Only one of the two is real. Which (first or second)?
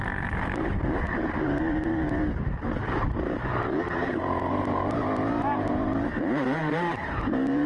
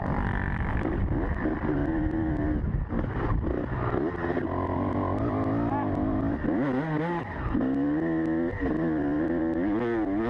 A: second